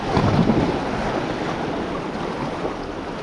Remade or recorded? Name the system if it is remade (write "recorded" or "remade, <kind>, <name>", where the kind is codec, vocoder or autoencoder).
recorded